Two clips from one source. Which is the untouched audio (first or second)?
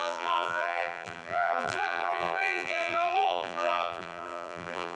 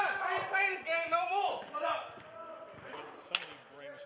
second